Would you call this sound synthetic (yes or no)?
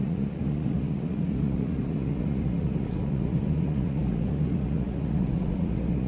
yes